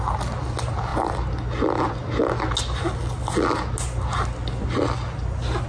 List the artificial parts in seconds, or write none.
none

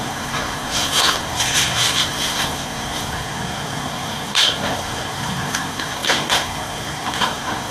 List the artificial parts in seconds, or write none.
0.0-7.7 (codec, SNAC)